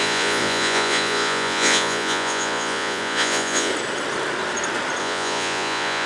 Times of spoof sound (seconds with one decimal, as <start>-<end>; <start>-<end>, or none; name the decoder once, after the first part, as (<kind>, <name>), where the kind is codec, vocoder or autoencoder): 0.0-3.7 (vocoder, Vocos); 5.0-6.1